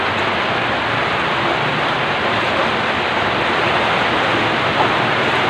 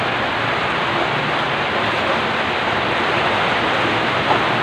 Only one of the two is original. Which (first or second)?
second